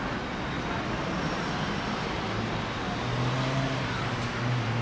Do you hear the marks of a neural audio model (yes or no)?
no